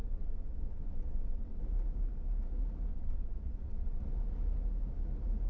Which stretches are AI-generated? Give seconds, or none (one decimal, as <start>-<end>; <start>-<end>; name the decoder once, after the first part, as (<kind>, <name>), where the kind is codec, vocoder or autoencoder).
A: 0.0-1.6 (vocoder, WaveNeXt); 2.9-4.0